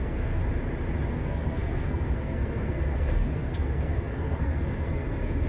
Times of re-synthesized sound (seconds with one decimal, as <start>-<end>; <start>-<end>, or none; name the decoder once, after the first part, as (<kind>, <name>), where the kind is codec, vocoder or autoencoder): 0.0-0.4 (codec, SNAC); 1.1-5.5